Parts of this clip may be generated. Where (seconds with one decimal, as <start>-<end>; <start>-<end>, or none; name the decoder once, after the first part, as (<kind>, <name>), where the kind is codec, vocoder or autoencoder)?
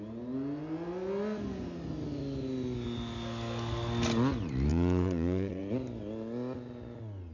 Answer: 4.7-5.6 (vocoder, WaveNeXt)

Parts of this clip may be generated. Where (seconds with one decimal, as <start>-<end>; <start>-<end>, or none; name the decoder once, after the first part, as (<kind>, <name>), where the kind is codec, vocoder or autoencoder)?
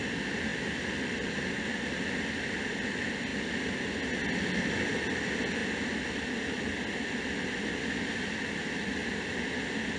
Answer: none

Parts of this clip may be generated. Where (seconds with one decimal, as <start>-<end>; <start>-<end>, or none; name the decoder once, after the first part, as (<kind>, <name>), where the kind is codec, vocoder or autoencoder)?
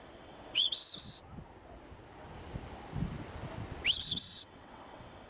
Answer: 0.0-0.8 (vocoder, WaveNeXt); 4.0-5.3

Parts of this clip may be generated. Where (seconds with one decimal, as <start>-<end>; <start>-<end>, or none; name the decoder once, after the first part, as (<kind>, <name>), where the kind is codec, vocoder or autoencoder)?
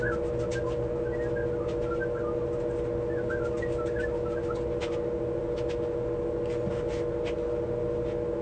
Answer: none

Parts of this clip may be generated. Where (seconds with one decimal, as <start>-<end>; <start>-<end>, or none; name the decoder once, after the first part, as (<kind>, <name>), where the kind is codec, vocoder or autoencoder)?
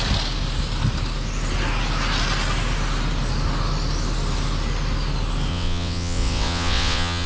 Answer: 5.5-7.3 (vocoder, WaveNeXt)